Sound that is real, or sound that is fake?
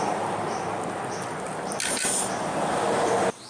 real